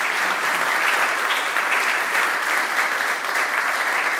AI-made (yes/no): yes